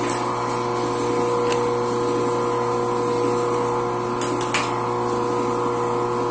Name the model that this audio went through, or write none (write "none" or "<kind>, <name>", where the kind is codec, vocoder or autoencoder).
none